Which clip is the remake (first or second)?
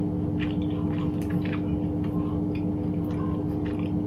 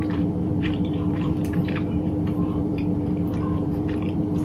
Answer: second